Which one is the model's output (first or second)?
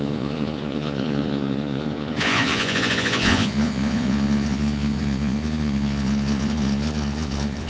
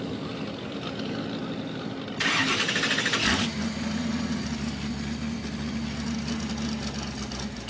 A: first